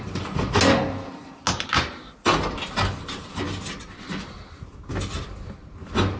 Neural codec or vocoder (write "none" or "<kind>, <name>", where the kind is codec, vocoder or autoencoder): none